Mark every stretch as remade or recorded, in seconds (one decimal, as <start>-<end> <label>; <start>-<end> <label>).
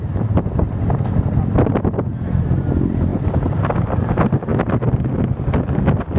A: 0.0-6.2 recorded